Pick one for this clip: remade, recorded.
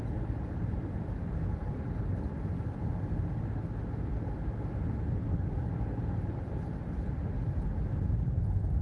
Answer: recorded